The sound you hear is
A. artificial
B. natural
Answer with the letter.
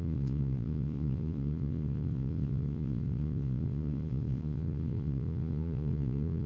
A